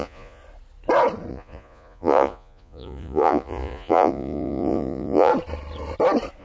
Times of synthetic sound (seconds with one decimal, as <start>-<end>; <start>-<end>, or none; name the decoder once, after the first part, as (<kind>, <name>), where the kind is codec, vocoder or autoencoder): 0.0-0.4 (vocoder, Vocos); 1.3-5.3

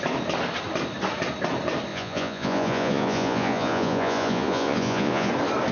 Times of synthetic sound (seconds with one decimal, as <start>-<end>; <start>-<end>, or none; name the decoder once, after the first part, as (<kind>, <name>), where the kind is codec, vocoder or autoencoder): 1.9-5.3 (vocoder, Vocos)

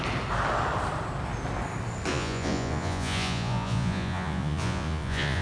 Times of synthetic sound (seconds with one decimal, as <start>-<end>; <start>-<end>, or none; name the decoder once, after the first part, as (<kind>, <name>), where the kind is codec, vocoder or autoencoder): 2.1-5.4 (vocoder, Vocos)